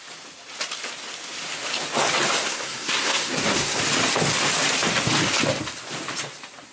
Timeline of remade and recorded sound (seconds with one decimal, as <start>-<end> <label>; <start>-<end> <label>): 0.0-2.5 recorded; 2.5-3.8 remade; 3.8-6.7 recorded